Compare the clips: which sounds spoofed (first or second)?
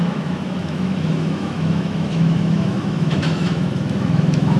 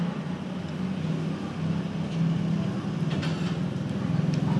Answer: first